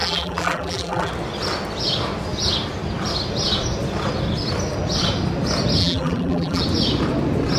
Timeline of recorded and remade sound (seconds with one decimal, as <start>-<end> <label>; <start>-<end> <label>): 0.0-1.1 remade; 1.1-5.8 recorded; 5.8-6.6 remade; 6.6-7.6 recorded